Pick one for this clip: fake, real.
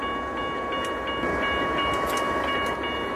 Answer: real